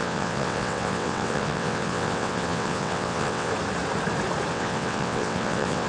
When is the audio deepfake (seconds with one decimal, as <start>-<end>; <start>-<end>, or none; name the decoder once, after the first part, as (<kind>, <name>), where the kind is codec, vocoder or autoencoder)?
0.0-3.5 (vocoder, WaveNeXt); 4.5-5.9